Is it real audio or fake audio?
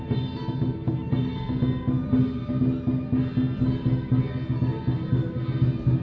real